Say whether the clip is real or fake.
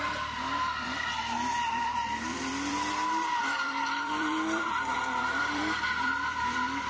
fake